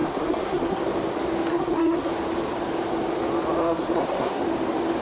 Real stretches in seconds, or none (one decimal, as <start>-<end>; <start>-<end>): 0.8-1.5; 2.1-3.6; 4.4-5.0